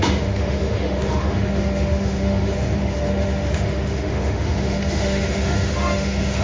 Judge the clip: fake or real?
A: fake